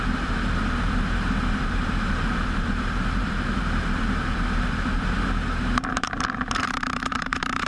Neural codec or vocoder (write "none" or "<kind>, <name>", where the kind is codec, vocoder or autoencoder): vocoder, BigVGAN v2